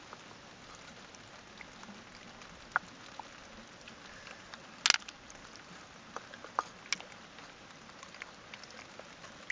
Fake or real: real